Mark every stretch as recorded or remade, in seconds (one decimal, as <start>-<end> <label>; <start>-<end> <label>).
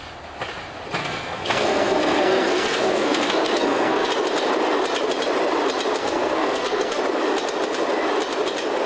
0.0-1.0 recorded; 1.0-4.1 remade; 4.1-6.0 recorded; 6.0-7.0 remade; 7.0-8.9 recorded